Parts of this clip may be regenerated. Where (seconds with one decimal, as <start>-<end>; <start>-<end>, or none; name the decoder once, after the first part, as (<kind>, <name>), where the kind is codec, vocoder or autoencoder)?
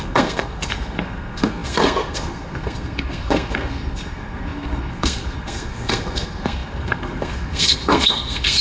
0.0-8.6 (codec, SNAC)